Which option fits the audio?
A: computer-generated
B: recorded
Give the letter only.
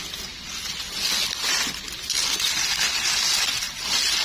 B